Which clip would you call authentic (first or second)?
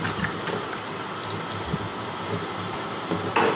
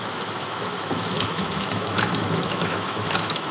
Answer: first